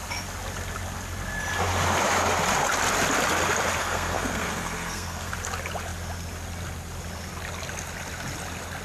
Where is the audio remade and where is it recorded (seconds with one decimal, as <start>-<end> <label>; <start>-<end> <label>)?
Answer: 0.0-3.8 recorded; 3.8-5.3 remade; 5.3-8.8 recorded